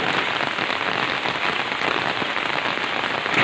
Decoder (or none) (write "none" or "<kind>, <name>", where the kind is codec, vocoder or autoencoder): none